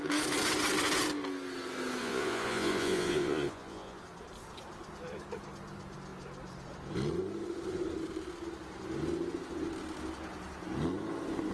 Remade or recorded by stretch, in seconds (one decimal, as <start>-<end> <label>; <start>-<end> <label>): 0.0-2.0 recorded; 2.0-4.0 remade; 4.0-11.5 recorded